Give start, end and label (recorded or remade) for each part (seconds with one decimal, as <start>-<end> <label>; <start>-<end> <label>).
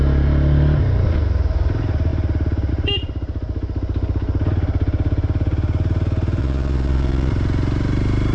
0.0-6.4 recorded; 6.4-7.3 remade; 7.3-8.3 recorded